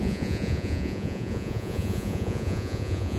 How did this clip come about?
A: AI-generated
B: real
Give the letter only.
A